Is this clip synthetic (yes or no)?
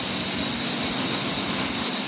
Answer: no